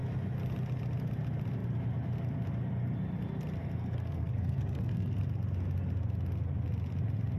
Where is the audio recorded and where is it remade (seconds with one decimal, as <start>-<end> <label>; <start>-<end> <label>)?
0.0-3.6 recorded; 3.6-5.2 remade; 5.2-7.4 recorded